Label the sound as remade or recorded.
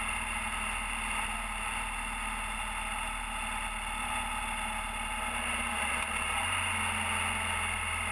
recorded